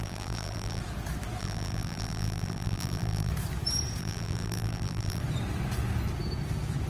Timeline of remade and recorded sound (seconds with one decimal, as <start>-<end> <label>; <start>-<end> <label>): 0.0-0.8 remade; 0.8-1.4 recorded; 1.4-3.3 remade; 3.3-4.0 recorded; 4.0-5.2 remade; 5.2-6.9 recorded